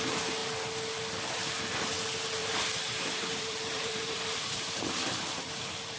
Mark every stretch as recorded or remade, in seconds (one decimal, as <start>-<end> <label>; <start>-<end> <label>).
0.0-2.4 recorded; 2.4-6.0 remade